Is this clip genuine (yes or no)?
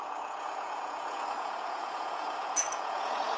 no